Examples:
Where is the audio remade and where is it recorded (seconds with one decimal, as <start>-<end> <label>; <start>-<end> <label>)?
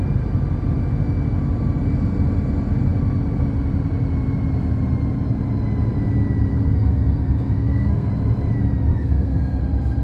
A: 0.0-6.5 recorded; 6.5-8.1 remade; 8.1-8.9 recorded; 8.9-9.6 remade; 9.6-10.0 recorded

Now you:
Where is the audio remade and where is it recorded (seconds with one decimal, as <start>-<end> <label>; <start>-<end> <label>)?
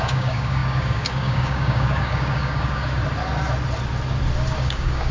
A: 0.0-3.0 remade; 3.0-4.6 recorded; 4.6-5.1 remade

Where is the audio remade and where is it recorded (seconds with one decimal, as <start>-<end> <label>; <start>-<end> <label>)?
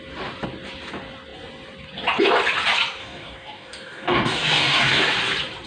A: 0.0-3.0 recorded; 3.0-5.0 remade; 5.0-5.7 recorded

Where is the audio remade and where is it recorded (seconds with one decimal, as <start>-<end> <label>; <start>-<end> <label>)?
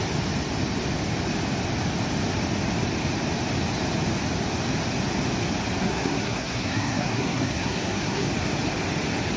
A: 0.0-5.8 recorded; 5.8-8.3 remade; 8.3-9.4 recorded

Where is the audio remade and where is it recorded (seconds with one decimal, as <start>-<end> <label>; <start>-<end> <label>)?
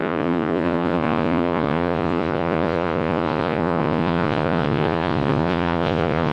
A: 0.0-6.3 remade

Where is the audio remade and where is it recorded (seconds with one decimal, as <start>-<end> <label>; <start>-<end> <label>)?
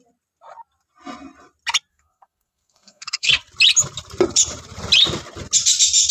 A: 0.0-1.9 recorded; 1.9-3.3 remade; 3.3-6.1 recorded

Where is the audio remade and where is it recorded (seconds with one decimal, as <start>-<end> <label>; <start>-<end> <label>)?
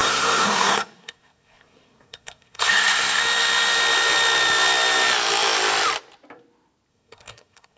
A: 0.0-3.2 remade; 3.2-6.9 recorded; 6.9-7.8 remade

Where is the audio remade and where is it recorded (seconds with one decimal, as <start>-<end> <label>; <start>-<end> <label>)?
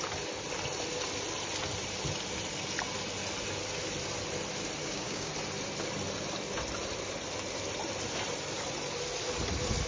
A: 0.0-4.8 recorded; 4.8-5.3 remade; 5.3-9.9 recorded